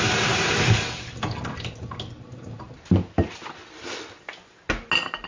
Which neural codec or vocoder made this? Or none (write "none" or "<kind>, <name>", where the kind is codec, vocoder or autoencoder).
none